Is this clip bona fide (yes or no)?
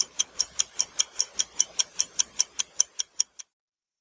no